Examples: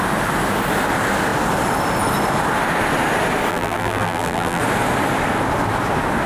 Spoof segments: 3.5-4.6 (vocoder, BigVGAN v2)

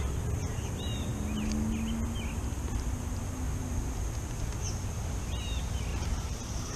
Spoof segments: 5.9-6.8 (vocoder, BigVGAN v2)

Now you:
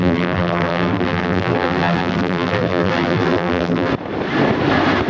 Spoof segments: 0.0-3.9 (vocoder, BigVGAN v2)

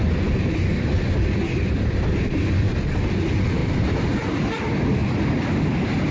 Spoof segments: 3.6-4.3 (vocoder, BigVGAN v2)